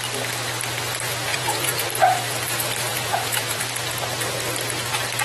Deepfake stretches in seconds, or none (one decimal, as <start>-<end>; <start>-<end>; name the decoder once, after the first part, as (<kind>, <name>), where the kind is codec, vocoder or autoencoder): 1.3-1.9 (vocoder, Vocos); 2.9-3.6